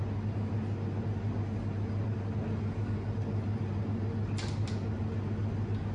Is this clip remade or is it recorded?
recorded